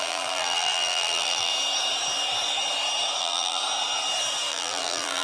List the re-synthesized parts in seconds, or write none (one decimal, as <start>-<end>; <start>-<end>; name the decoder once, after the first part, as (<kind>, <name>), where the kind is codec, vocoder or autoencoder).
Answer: 0.0-1.5 (vocoder, BigVGAN v2); 3.2-3.6; 4.5-5.2